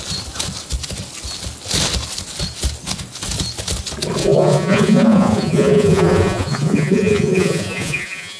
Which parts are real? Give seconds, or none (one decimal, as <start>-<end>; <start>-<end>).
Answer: 0.0-4.2